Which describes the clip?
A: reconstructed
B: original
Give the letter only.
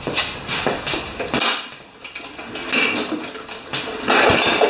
B